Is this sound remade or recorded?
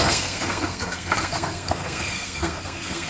remade